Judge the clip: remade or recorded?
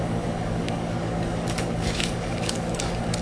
remade